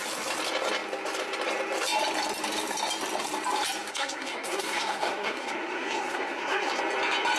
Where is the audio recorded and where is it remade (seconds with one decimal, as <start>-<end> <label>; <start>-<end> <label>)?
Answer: 0.0-3.9 recorded; 3.9-6.8 remade; 6.8-7.4 recorded